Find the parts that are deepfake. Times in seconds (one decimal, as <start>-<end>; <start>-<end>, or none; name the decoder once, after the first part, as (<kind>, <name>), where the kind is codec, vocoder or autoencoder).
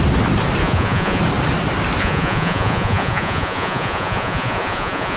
0.6-1.2 (vocoder, Vocos); 2.0-5.2